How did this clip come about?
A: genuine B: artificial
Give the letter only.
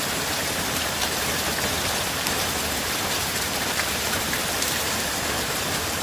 B